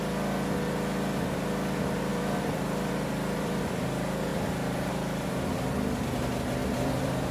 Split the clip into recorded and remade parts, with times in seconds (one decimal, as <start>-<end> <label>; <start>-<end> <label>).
0.0-2.1 recorded; 2.1-3.7 remade; 3.7-4.3 recorded; 4.3-4.9 remade; 4.9-6.6 recorded; 6.6-7.3 remade